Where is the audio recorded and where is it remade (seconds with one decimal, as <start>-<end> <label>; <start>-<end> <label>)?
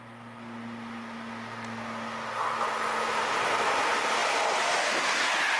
0.0-5.6 recorded